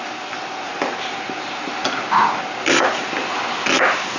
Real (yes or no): yes